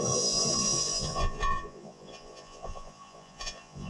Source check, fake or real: fake